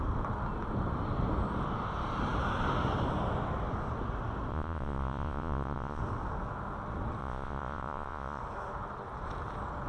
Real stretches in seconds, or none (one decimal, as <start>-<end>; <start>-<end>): 0.0-4.5; 6.0-7.2; 8.4-9.9